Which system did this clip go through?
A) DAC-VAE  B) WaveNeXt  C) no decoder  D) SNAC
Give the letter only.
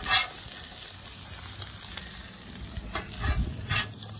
C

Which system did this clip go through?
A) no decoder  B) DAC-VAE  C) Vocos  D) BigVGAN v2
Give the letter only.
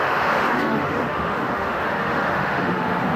B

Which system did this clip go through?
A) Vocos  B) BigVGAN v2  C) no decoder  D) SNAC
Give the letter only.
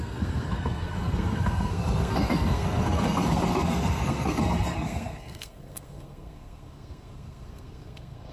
D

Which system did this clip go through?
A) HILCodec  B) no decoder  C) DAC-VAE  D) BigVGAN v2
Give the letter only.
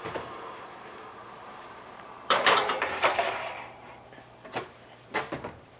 D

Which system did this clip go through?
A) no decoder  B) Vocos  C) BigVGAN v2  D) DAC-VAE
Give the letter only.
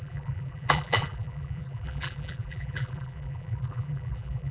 C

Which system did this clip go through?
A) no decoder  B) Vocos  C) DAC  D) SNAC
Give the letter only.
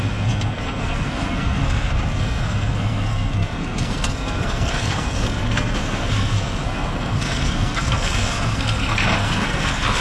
D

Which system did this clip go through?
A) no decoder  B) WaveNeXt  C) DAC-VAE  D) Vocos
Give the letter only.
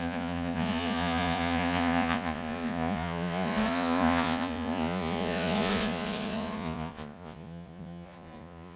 D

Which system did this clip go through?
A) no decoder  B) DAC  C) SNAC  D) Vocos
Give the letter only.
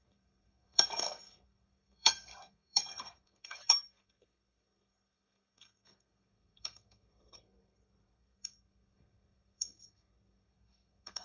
C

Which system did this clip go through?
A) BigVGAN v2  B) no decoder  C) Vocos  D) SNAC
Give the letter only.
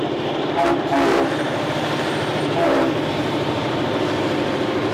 A